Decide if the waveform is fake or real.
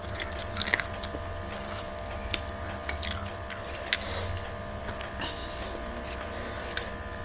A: real